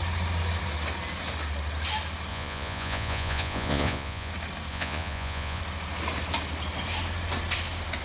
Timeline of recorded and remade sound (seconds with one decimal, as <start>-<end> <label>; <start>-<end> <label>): 0.0-2.3 recorded; 2.3-4.3 remade; 4.3-4.7 recorded; 4.7-5.6 remade; 5.6-8.0 recorded